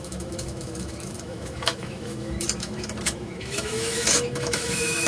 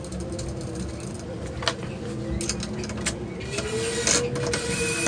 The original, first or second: second